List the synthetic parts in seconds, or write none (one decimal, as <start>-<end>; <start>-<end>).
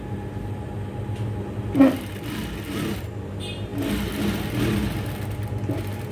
none